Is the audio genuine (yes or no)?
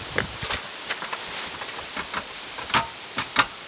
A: yes